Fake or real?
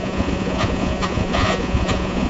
fake